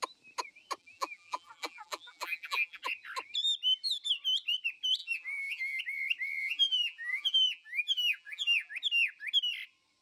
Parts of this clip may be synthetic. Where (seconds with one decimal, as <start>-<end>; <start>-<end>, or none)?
0.8-2.8; 5.0-5.8; 6.4-8.7